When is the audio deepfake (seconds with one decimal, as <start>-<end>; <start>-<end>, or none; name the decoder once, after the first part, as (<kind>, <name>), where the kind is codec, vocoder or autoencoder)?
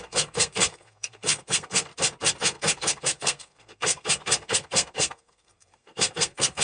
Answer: 0.0-1.9 (codec, SNAC); 2.4-6.6